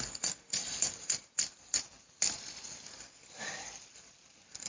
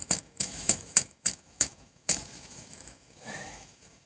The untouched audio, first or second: first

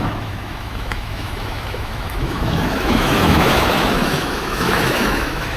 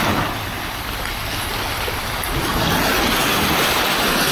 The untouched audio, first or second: second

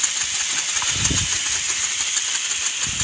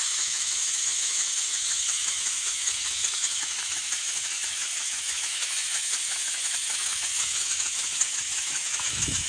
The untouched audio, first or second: first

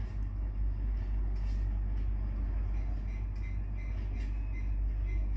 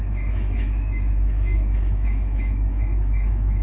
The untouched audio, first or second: first